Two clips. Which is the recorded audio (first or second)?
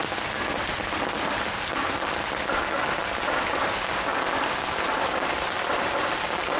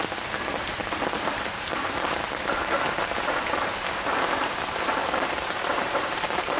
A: first